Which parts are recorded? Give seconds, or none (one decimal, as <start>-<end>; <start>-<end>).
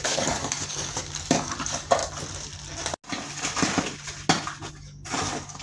2.0-4.7